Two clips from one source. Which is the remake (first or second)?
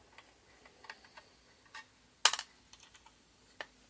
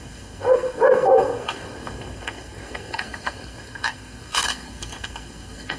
second